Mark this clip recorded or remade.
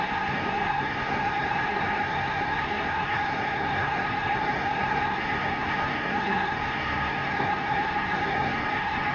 remade